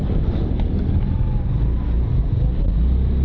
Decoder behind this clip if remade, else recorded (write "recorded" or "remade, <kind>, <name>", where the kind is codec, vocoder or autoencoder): recorded